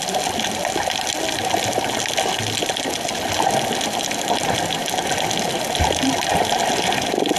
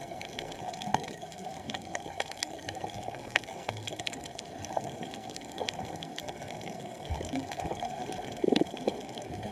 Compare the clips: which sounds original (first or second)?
first